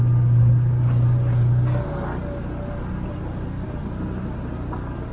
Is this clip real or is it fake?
real